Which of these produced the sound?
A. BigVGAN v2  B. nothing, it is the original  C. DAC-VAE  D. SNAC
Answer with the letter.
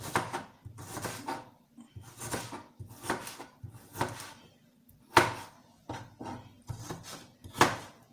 B